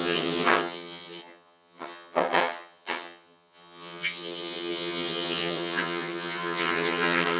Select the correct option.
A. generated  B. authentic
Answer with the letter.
A